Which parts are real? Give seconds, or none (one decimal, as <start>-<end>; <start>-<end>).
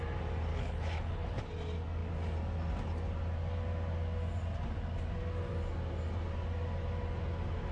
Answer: 0.0-0.5; 1.4-7.7